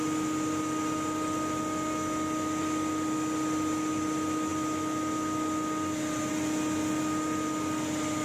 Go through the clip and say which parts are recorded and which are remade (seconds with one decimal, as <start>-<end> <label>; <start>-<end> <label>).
0.0-8.2 recorded